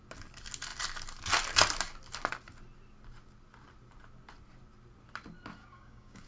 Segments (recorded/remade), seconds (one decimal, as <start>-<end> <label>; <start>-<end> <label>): 0.0-5.6 recorded; 5.6-6.3 remade